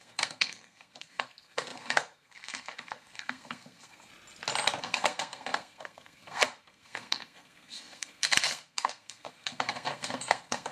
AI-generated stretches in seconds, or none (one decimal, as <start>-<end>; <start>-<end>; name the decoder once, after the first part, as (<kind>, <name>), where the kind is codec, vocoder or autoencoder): 0.0-4.1 (codec, SNAC); 4.8-10.7